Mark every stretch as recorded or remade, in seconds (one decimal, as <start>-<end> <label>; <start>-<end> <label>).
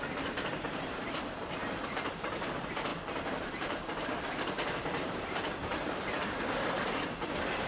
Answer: 0.0-7.7 remade